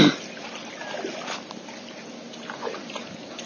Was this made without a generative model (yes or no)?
yes